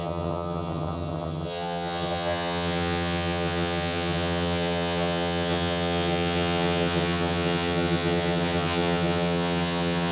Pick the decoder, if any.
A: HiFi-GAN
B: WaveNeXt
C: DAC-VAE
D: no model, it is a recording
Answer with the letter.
A